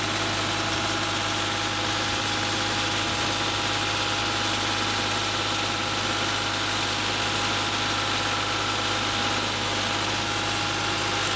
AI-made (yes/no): no